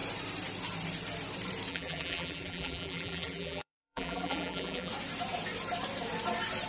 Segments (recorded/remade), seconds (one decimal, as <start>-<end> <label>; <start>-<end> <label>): 0.0-1.7 recorded; 1.7-4.9 remade; 4.9-6.7 recorded